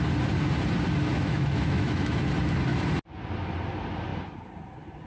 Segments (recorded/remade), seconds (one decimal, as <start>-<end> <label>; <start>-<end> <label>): 0.0-1.1 recorded; 1.1-2.2 remade; 2.2-5.1 recorded

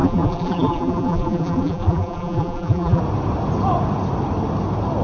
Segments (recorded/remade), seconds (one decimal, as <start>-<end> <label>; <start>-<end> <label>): 0.0-3.0 remade; 3.0-5.0 recorded

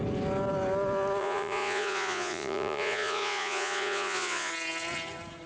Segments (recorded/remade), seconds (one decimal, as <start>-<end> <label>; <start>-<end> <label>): 0.0-1.2 recorded; 1.2-4.5 remade; 4.5-5.5 recorded

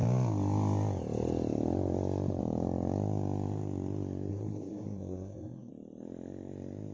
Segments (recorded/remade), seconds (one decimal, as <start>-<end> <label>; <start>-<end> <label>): 0.0-4.3 recorded; 4.3-5.7 remade; 5.7-6.9 recorded

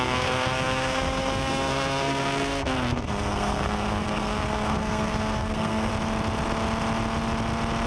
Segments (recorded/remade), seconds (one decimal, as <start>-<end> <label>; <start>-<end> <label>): 0.0-5.9 remade; 5.9-7.9 recorded

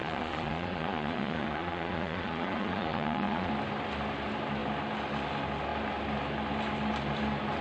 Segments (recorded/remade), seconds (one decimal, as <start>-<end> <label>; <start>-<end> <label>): 0.0-3.5 remade; 3.5-7.6 recorded